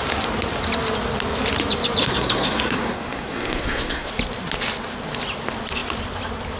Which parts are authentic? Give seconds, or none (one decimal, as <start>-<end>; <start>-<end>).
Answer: 0.0-2.0; 4.1-6.6